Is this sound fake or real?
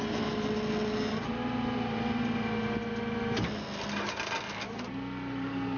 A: real